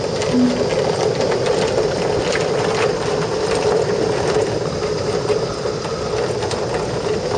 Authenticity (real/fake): real